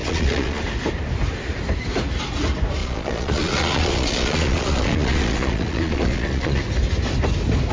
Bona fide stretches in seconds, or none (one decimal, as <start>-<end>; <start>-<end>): 0.6-2.8; 6.6-7.7